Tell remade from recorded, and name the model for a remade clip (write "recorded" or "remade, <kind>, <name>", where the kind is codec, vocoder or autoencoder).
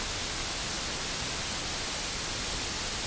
recorded